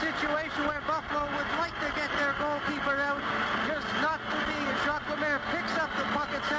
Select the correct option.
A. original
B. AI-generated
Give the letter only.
A